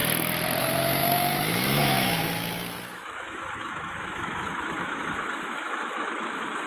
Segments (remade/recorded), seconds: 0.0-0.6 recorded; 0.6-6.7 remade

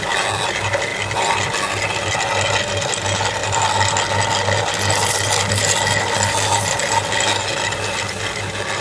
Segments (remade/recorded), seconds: 0.0-8.8 recorded

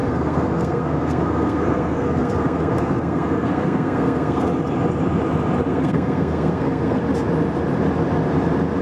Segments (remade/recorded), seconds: 0.0-4.5 remade; 4.5-5.7 recorded; 5.7-7.0 remade; 7.0-8.8 recorded

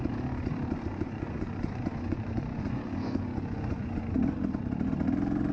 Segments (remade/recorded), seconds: 0.0-0.9 recorded; 0.9-4.2 remade; 4.2-5.5 recorded

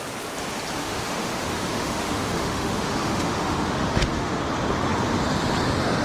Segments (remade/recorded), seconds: 0.0-0.8 recorded; 0.8-4.4 remade; 4.4-6.0 recorded